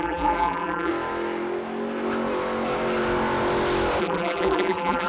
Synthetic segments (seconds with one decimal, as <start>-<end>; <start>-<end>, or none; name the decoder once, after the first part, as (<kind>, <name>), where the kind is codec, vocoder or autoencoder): 0.0-0.9 (vocoder, BigVGAN v2); 4.0-5.1